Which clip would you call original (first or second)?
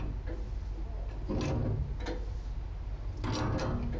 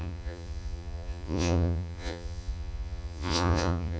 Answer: first